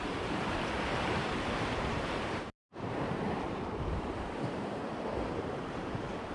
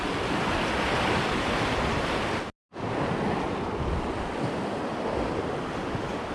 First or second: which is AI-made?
first